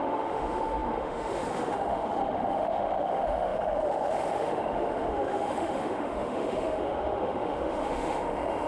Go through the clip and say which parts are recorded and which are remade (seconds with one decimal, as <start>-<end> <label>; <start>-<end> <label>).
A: 0.0-8.7 remade